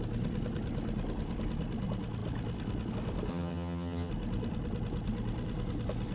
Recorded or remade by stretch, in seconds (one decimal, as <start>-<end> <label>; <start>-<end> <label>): 0.0-3.3 recorded; 3.3-4.1 remade; 4.1-6.1 recorded